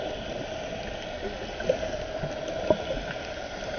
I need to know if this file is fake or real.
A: real